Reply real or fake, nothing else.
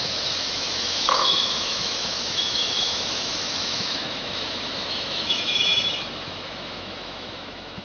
fake